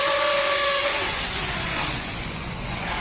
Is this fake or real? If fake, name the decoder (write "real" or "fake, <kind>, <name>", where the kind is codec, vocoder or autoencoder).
fake, vocoder, Vocos